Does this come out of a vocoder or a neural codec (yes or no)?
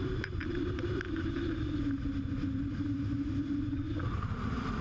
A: no